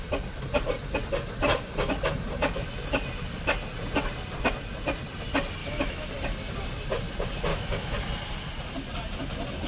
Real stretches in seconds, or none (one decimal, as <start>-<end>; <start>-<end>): 0.0-5.6; 6.1-7.5; 8.0-9.7